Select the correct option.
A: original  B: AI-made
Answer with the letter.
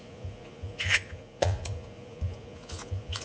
B